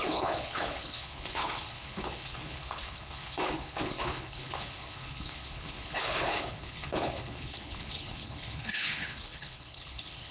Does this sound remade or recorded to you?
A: remade